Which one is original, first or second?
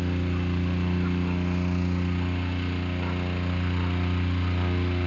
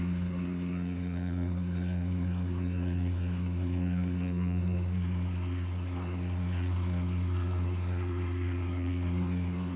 first